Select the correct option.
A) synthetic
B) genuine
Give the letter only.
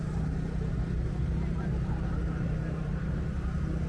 A